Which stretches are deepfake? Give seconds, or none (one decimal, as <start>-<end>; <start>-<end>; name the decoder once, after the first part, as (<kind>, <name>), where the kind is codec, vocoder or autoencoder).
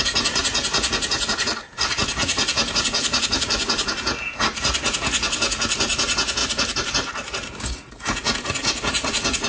0.0-9.5 (vocoder, Vocos)